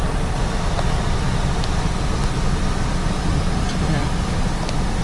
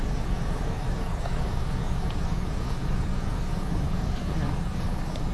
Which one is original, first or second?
first